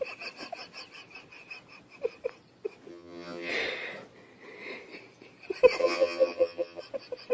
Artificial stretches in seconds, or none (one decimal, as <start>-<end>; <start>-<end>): 2.9-3.5; 5.8-6.8